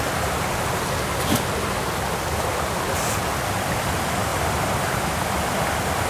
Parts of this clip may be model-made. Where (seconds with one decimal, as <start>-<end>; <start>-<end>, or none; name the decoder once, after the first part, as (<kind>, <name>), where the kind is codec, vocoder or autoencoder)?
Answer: none